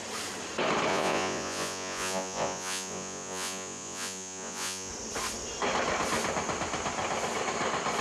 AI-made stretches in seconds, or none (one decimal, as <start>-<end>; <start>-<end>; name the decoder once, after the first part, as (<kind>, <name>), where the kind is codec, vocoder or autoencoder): 0.9-4.9 (vocoder, Vocos)